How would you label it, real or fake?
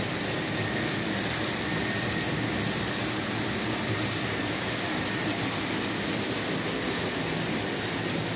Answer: real